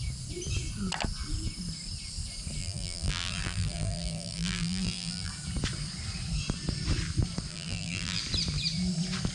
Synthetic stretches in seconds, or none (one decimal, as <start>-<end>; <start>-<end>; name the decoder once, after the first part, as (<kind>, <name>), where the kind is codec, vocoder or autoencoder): 2.6-5.3 (vocoder, BigVGAN v2); 7.5-8.2